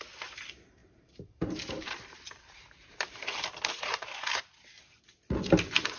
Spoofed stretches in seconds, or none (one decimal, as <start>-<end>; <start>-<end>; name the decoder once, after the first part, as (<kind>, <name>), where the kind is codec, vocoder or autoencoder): 0.8-4.4 (vocoder, BigVGAN v2)